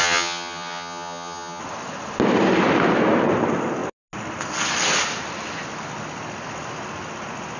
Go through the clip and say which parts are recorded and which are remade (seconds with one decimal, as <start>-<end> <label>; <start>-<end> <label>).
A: 0.0-1.6 remade; 1.6-7.6 recorded